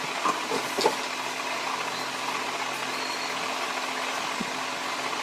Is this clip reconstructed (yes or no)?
no